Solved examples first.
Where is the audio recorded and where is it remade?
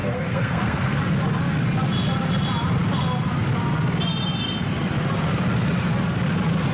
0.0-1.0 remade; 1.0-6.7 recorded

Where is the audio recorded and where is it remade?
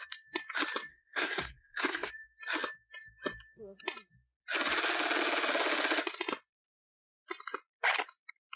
0.0-0.9 recorded; 0.9-2.1 remade; 2.1-8.6 recorded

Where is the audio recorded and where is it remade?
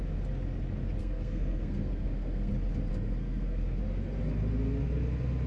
0.0-1.0 recorded; 1.0-2.5 remade; 2.5-2.9 recorded; 2.9-3.8 remade; 3.8-5.5 recorded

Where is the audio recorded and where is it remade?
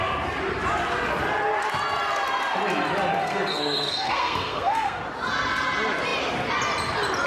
0.0-3.2 recorded; 3.2-5.0 remade; 5.0-7.3 recorded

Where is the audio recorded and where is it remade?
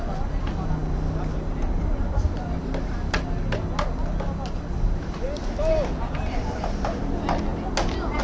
0.0-8.2 recorded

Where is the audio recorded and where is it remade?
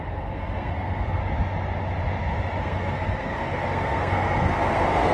0.0-1.2 remade; 1.2-2.6 recorded; 2.6-5.1 remade